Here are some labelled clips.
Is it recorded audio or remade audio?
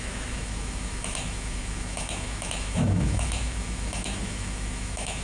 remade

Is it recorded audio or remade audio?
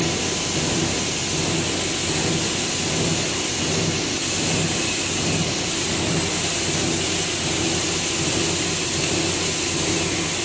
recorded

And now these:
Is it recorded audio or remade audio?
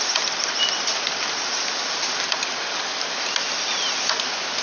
recorded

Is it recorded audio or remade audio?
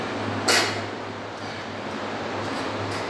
recorded